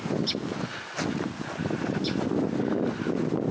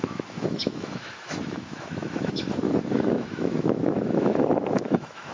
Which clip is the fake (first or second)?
second